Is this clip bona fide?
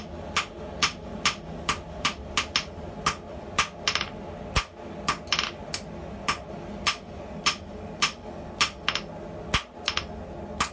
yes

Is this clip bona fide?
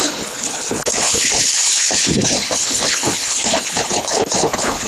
no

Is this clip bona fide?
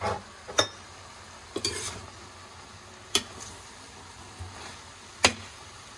yes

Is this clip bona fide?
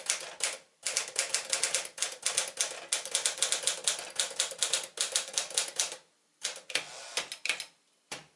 yes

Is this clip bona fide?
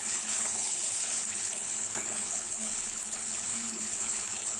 no